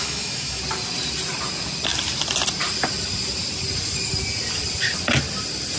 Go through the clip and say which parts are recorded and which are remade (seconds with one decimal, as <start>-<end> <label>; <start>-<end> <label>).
0.0-0.6 remade; 0.6-5.8 recorded

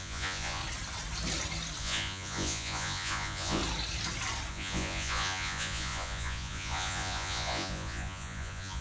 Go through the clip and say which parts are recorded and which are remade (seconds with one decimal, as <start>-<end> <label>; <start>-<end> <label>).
0.0-0.6 remade; 0.6-1.8 recorded; 1.8-3.6 remade; 3.6-4.5 recorded; 4.5-8.8 remade

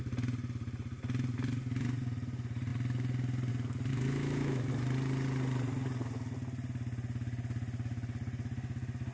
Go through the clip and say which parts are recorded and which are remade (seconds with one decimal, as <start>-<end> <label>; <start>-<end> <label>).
0.0-3.9 recorded; 3.9-4.7 remade; 4.7-9.1 recorded

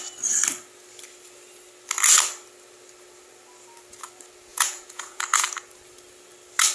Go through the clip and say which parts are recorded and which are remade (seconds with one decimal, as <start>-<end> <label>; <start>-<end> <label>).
0.0-4.5 recorded; 4.5-5.2 remade; 5.2-6.7 recorded